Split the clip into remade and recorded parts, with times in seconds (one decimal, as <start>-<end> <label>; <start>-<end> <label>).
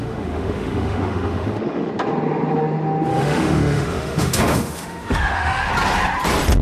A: 0.0-1.9 remade; 1.9-3.1 recorded; 3.1-5.7 remade; 5.7-6.6 recorded